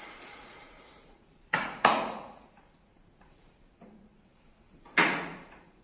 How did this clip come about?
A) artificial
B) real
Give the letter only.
A